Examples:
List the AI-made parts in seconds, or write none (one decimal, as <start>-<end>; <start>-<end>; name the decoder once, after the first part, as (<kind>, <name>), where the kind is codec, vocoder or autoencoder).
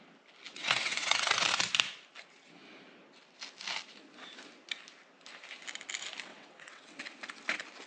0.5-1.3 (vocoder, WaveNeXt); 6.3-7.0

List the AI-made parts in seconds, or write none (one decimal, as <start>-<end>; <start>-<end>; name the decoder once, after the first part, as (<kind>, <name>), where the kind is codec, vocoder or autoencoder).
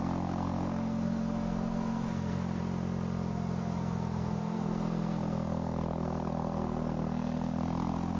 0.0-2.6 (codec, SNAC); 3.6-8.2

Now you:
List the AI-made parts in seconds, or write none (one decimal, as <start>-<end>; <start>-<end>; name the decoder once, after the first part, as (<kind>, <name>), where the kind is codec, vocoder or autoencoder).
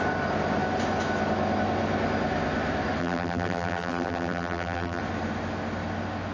3.0-5.0 (vocoder, BigVGAN v2)